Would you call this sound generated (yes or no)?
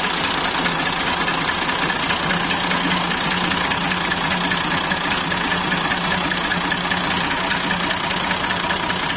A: no